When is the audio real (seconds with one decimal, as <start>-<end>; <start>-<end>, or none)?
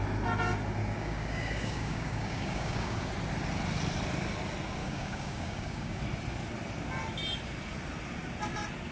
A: 0.0-0.8; 3.1-4.8; 6.0-8.9